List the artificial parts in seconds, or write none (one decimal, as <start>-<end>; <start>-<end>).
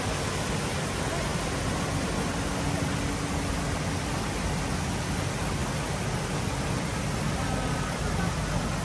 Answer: none